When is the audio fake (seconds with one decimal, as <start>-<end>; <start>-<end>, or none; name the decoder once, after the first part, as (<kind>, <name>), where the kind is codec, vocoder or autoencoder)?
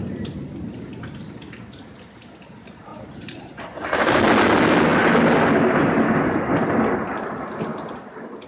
2.9-4.2 (vocoder, BigVGAN v2)